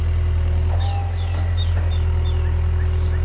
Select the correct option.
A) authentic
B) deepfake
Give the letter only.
A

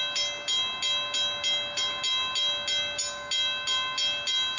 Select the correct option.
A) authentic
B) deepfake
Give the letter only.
A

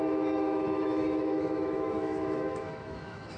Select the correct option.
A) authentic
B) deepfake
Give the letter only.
B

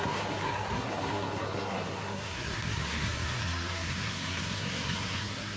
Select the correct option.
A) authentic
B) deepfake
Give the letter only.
B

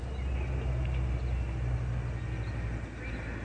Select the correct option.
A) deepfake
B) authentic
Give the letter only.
B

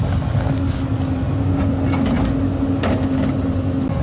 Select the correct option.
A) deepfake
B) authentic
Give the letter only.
B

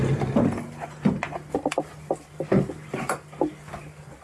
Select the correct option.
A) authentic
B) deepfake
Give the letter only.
A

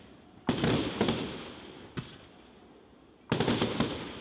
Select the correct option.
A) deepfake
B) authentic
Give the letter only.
B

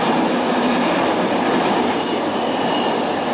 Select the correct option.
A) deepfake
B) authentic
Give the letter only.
B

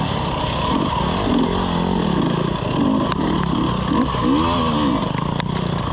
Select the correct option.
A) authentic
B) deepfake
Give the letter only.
A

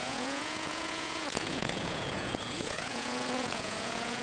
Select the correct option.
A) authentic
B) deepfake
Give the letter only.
B